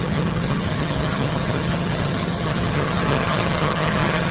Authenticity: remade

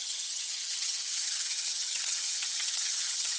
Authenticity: remade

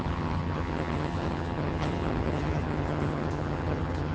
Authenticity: remade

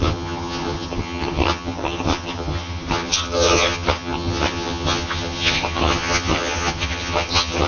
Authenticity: remade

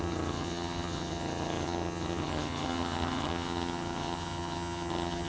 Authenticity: remade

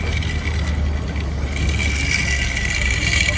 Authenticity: recorded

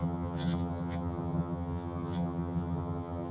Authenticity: remade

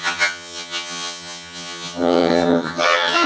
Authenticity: remade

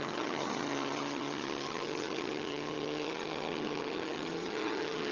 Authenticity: remade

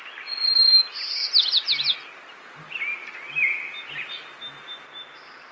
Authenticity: recorded